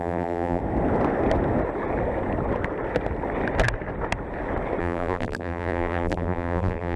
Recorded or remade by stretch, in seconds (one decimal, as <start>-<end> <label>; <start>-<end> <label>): 0.0-0.6 remade; 0.6-4.8 recorded; 4.8-7.0 remade